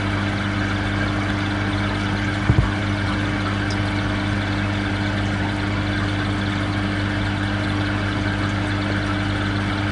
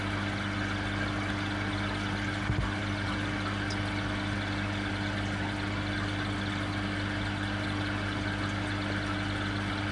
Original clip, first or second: second